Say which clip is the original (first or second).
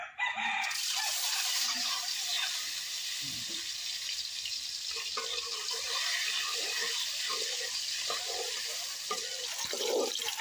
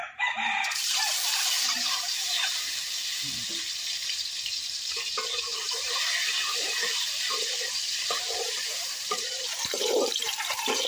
first